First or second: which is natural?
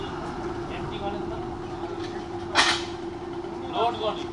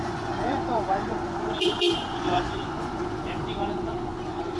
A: first